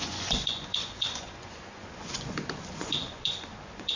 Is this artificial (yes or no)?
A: yes